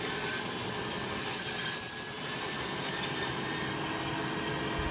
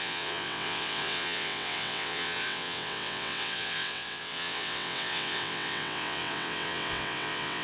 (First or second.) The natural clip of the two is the first